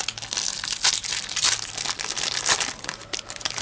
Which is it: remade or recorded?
recorded